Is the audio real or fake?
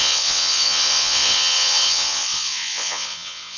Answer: fake